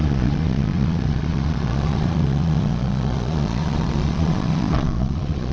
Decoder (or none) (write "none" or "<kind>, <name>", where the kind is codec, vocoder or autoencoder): vocoder, Vocos